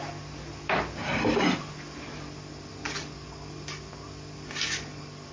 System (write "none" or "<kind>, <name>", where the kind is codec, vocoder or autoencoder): none